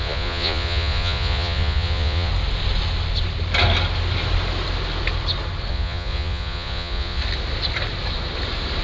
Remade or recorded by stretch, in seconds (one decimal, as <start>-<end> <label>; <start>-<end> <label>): 0.0-2.3 remade; 2.3-5.7 recorded; 5.7-7.2 remade; 7.2-8.8 recorded